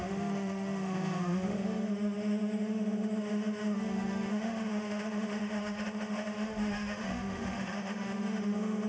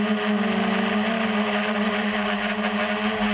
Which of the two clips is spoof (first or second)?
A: first